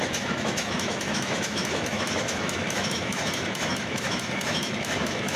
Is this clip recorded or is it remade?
remade